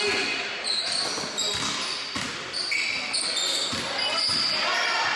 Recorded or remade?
recorded